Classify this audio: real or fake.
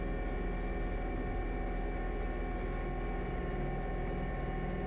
real